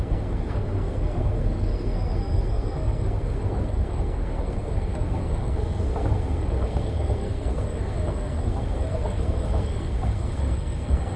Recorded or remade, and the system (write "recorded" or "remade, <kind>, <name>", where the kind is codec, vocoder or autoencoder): remade, codec, SNAC